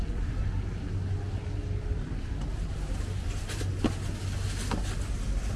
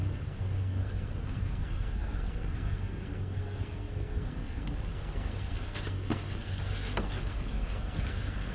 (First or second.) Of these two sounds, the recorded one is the first